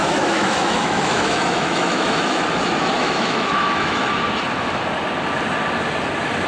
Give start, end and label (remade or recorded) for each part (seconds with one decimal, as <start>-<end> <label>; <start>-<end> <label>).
0.0-2.4 remade; 2.4-3.0 recorded; 3.0-4.1 remade; 4.1-6.5 recorded

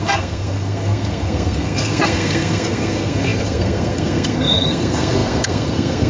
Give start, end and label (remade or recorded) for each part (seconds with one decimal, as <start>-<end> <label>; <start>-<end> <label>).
0.0-6.1 remade

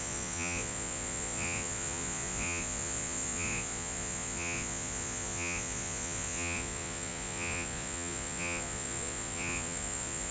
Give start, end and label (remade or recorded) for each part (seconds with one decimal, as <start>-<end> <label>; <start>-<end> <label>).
0.0-10.3 remade

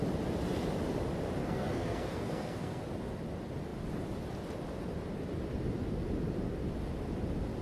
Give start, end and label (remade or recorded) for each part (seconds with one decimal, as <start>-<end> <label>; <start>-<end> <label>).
0.0-1.4 recorded; 1.4-2.8 remade; 2.8-7.6 recorded

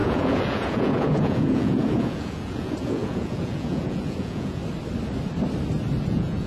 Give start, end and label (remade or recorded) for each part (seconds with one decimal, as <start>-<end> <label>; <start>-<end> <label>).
0.0-4.6 remade; 4.6-6.0 recorded; 6.0-6.5 remade

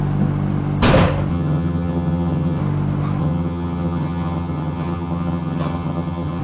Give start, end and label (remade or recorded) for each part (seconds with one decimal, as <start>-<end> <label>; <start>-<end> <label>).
0.0-1.3 recorded; 1.3-2.6 remade; 2.6-3.2 recorded; 3.2-6.4 remade